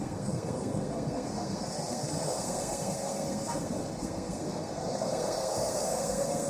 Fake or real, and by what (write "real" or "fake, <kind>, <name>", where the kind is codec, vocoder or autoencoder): fake, codec, SNAC